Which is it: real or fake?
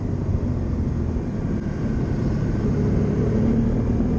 real